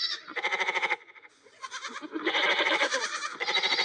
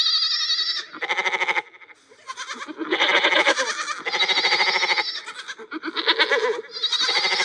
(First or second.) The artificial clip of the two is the first